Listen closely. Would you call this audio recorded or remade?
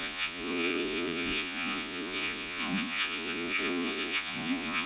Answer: remade